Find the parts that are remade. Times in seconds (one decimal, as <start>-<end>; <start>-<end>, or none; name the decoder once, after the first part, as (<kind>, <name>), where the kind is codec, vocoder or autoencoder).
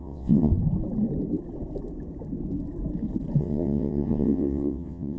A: 0.0-0.5 (vocoder, WaveNeXt); 3.4-5.2